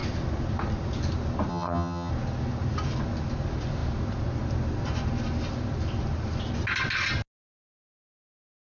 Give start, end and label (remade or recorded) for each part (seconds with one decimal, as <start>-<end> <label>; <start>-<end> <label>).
0.0-1.5 recorded; 1.5-2.1 remade; 2.1-8.8 recorded